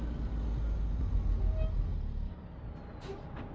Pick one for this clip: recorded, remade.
recorded